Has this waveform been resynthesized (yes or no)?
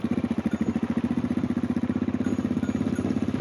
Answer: no